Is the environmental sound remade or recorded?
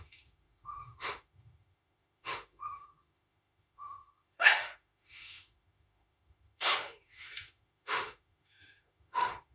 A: remade